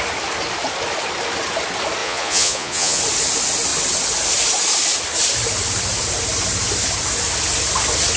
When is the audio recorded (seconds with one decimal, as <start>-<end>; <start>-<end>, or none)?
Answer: 0.0-2.0; 3.0-8.2